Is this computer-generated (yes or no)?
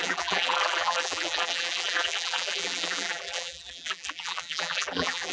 yes